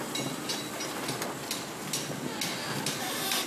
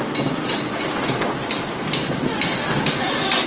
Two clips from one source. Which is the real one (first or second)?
first